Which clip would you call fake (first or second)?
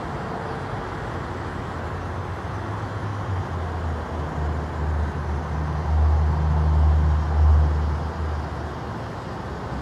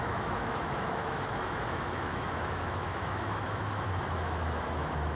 second